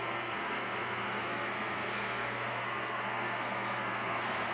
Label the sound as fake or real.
fake